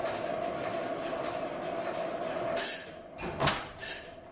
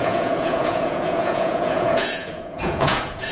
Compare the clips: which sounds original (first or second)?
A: first